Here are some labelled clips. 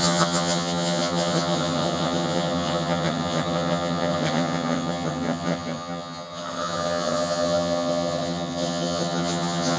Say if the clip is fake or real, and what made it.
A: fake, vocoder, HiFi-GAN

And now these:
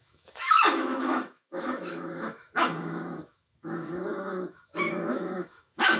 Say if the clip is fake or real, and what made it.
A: fake, autoencoder, DAC-VAE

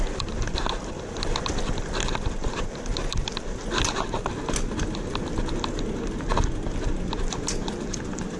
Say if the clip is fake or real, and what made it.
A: real